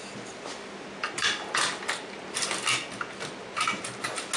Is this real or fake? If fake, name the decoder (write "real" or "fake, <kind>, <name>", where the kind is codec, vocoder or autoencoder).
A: real